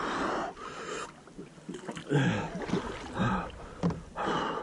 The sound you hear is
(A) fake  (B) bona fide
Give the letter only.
B